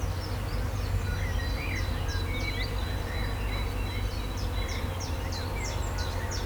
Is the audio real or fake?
real